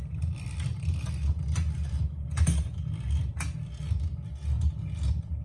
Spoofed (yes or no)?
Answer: no